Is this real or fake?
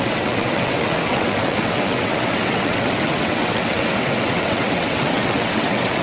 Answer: fake